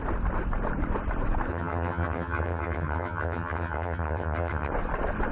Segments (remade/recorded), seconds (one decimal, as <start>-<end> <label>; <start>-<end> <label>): 0.0-1.5 recorded; 1.5-4.7 remade; 4.7-5.3 recorded